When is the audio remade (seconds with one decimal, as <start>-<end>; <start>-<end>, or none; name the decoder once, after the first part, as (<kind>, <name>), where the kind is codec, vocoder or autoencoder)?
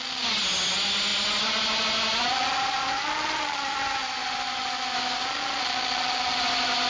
none